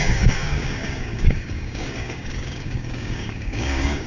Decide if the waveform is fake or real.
fake